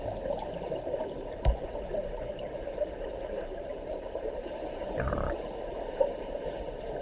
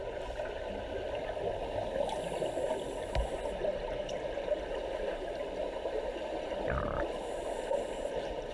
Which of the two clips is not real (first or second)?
first